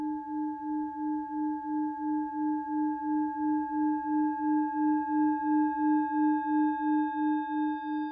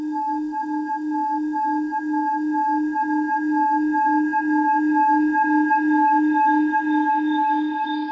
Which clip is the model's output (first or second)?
second